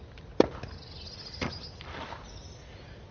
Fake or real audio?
real